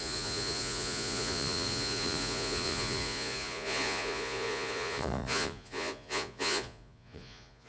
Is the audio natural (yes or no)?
no